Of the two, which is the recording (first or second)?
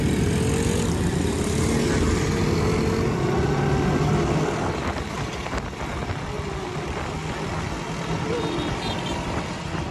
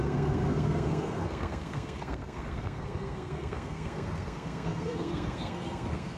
first